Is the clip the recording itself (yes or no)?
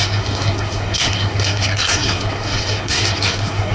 no